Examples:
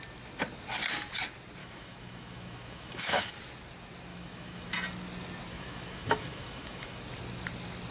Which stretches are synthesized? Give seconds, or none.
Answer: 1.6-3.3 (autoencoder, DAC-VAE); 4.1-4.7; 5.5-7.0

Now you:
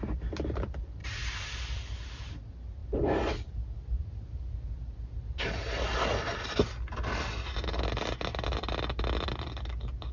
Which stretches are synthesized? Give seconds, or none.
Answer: 1.0-1.5 (vocoder, BigVGAN v2)

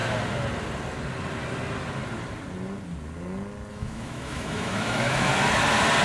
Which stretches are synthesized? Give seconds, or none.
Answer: 3.7-5.3 (autoencoder, DAC-VAE)

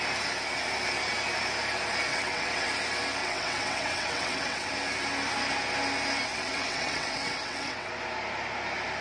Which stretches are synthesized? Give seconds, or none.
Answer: 2.1-2.7 (vocoder, WaveNeXt); 3.2-4.7; 6.3-7.9